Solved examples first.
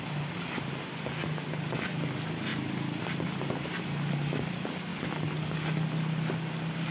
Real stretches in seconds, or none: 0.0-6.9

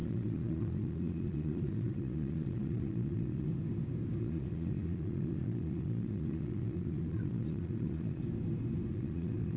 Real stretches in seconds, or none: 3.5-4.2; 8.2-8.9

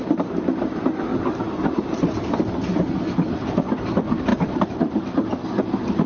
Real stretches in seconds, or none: 0.0-1.1; 2.3-4.3; 5.0-6.1